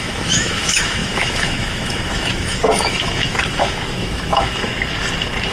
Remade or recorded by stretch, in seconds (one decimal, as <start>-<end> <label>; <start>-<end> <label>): 0.0-4.7 remade; 4.7-5.5 recorded

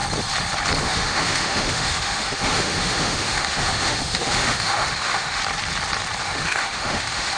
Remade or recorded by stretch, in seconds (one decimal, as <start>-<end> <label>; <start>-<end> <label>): 0.0-0.8 recorded; 0.8-5.4 remade; 5.4-6.2 recorded; 6.2-7.4 remade

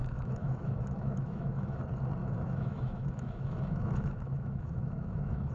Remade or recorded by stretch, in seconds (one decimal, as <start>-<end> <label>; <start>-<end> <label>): 0.0-1.8 remade; 1.8-2.2 recorded; 2.2-5.5 remade

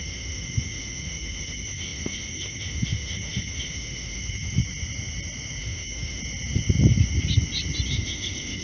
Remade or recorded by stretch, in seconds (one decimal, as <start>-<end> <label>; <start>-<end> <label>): 0.0-4.6 remade; 4.6-5.6 recorded; 5.6-6.2 remade; 6.2-7.9 recorded; 7.9-8.6 remade